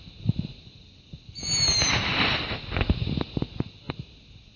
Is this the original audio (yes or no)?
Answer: yes